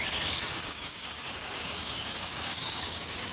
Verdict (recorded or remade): remade